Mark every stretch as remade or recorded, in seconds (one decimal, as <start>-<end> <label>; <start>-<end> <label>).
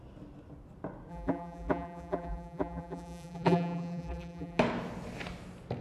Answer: 0.0-1.1 recorded; 1.1-4.6 remade; 4.6-5.8 recorded